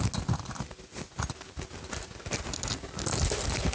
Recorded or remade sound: recorded